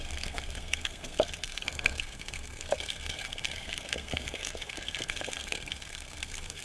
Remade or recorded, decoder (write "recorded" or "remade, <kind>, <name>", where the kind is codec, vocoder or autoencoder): remade, codec, SNAC